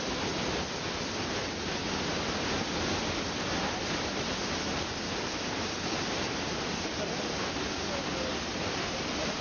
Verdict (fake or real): real